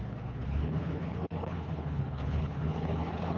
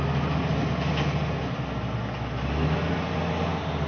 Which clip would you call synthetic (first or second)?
first